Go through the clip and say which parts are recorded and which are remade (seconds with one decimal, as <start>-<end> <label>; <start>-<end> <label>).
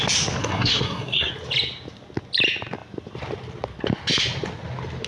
0.0-0.4 recorded; 0.4-1.3 remade; 1.3-5.1 recorded